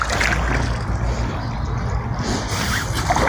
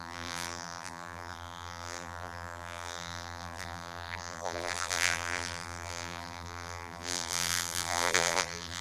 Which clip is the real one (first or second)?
first